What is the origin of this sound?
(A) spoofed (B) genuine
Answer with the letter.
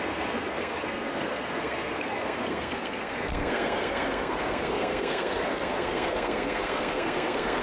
A